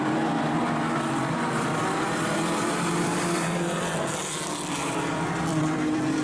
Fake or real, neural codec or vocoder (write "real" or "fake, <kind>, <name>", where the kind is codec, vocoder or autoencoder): fake, vocoder, BigVGAN v2